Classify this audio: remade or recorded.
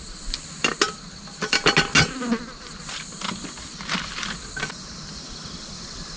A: recorded